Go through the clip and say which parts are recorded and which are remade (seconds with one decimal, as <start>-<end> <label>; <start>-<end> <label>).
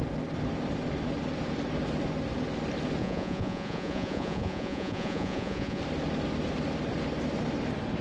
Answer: 0.0-3.0 recorded; 3.0-5.8 remade; 5.8-8.0 recorded